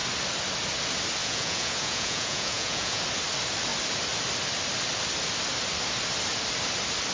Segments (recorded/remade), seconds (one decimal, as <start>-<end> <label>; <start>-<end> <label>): 0.0-1.2 recorded; 1.2-3.0 remade; 3.0-7.1 recorded